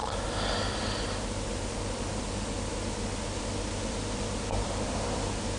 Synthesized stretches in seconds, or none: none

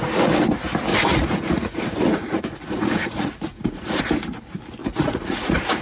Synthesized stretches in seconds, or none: 0.9-4.0 (vocoder, Vocos); 4.8-5.8

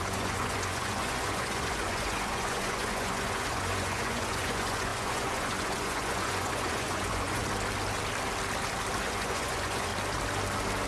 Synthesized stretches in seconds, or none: 0.0-7.4 (vocoder, Vocos); 9.0-9.9

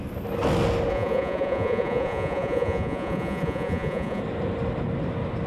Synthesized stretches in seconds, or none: 0.9-4.2 (vocoder, Vocos)